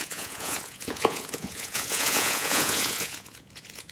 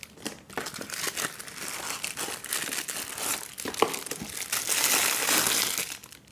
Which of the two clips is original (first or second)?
second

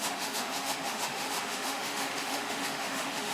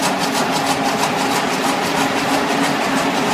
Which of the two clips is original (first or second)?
second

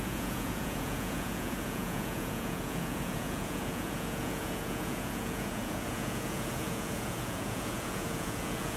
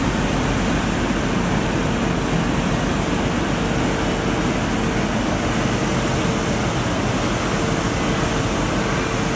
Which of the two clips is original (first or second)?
second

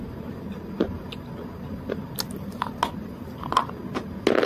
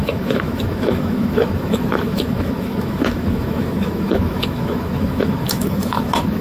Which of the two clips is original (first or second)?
first